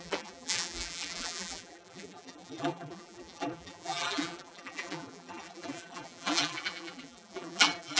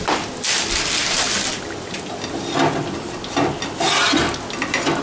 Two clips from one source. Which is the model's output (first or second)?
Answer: first